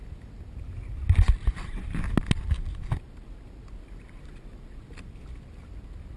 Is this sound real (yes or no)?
yes